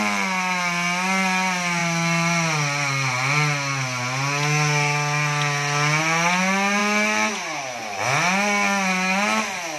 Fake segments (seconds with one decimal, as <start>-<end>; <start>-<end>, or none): none

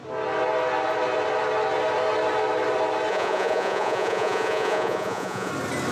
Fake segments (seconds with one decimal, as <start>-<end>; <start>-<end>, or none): 3.1-5.5

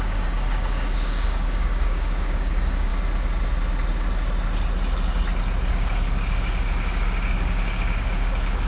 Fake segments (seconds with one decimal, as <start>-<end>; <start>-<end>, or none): 0.0-2.9; 5.7-8.7

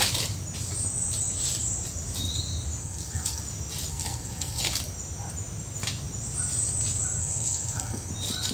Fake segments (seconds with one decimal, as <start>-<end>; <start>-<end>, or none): 2.8-3.4; 3.9-4.6; 7.2-8.1

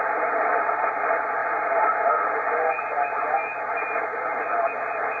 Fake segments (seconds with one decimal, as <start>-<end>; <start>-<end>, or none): none